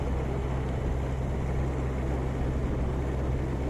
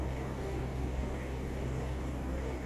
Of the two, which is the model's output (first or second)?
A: second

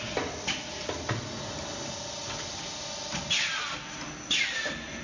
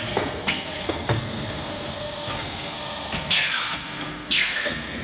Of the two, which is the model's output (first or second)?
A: second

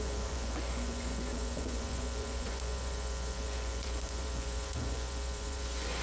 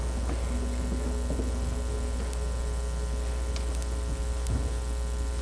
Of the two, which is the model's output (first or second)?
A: first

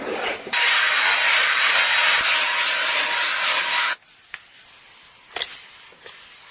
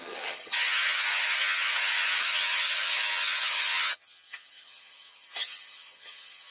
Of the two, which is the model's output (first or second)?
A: second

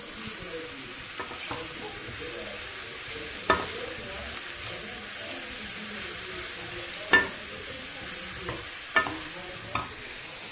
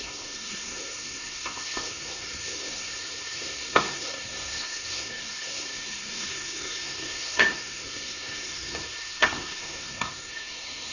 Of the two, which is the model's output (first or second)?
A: second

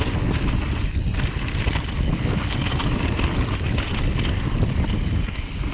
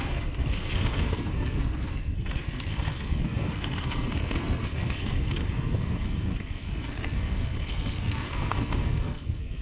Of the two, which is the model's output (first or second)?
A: second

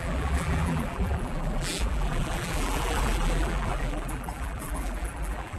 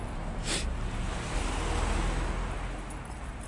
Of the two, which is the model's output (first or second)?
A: first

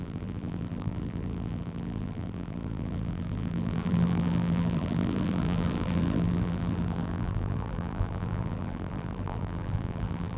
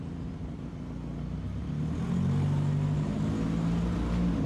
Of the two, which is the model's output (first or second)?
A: first